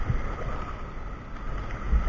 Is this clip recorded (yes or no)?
yes